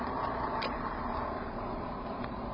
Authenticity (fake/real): fake